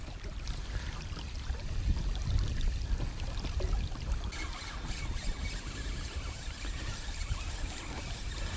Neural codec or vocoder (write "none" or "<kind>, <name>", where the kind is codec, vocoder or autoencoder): none